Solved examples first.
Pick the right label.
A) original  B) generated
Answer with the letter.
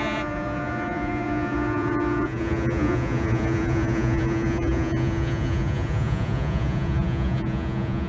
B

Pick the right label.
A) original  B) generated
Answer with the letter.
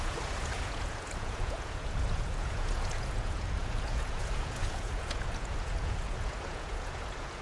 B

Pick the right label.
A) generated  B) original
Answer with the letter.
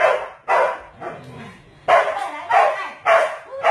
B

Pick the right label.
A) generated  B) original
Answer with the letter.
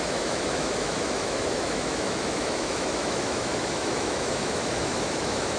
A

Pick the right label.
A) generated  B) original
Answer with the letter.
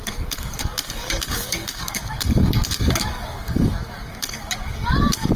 A